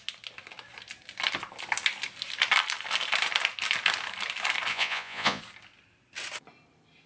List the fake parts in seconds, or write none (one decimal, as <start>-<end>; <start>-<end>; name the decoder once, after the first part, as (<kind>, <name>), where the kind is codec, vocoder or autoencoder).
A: 4.7-5.4 (vocoder, Vocos)